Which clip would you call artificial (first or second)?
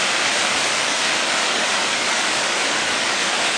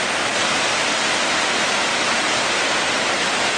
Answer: first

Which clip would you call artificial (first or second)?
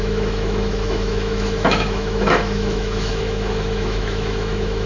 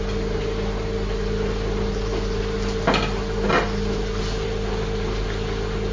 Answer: first